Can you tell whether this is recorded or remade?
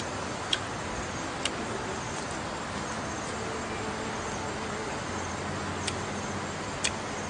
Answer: recorded